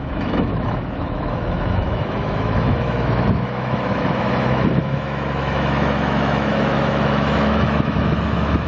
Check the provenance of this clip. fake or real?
fake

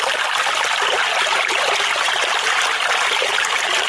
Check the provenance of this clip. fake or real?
real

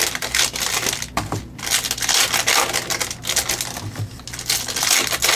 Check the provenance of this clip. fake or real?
real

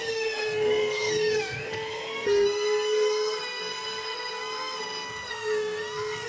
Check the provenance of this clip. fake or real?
fake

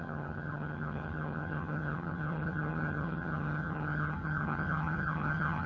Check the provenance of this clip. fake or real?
fake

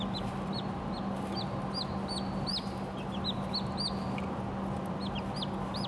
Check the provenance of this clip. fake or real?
real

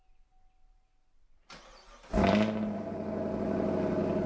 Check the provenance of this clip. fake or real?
real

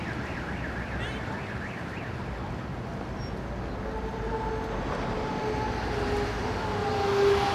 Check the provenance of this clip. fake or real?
real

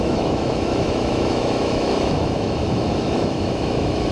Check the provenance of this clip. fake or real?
fake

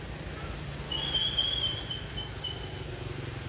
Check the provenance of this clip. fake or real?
real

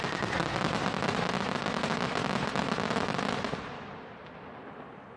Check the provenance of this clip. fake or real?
real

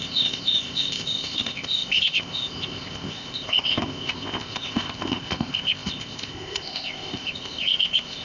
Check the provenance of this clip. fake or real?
fake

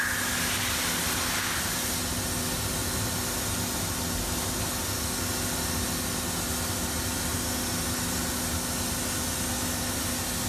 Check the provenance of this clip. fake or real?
real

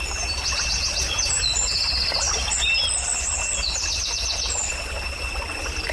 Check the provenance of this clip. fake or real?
real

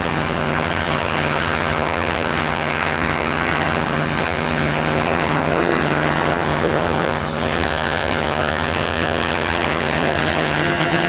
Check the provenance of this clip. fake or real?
fake